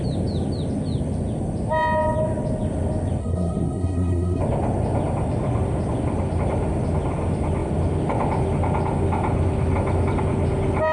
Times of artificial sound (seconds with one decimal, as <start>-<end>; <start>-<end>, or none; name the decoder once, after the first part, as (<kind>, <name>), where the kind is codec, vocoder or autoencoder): 3.2-4.4 (codec, SNAC)